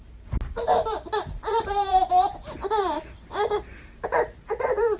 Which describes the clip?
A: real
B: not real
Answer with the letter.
B